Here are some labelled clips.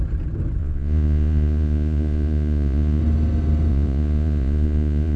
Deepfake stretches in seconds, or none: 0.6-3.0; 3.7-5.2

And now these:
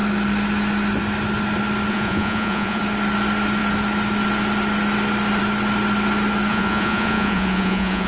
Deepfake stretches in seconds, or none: 1.9-2.8; 6.5-8.1

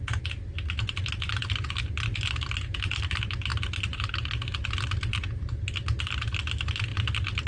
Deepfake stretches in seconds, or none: none

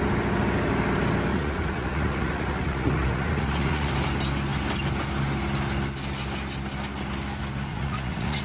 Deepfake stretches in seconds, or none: 1.3-3.9; 7.7-8.4

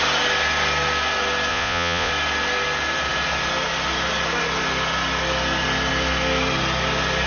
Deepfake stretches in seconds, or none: 1.5-2.1

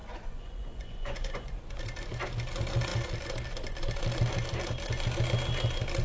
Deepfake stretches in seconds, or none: 0.0-1.8

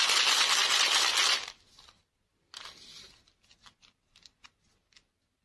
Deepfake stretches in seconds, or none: none

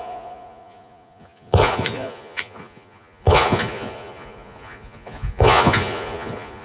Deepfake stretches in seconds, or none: 0.0-6.6